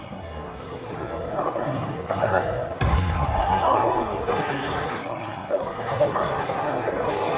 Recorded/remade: remade